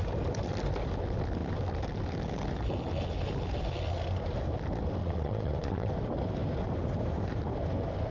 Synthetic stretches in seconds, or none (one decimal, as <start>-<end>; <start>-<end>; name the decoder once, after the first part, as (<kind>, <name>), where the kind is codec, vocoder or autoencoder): 5.0-5.9 (vocoder, WaveNeXt)